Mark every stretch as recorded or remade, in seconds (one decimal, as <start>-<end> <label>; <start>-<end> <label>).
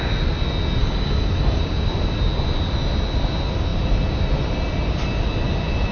0.0-0.8 recorded; 0.8-1.6 remade; 1.6-5.9 recorded